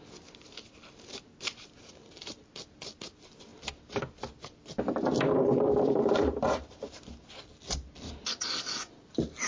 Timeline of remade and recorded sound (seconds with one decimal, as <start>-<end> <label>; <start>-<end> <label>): 0.0-9.5 recorded